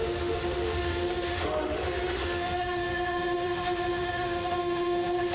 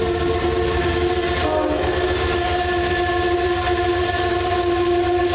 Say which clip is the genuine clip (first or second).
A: second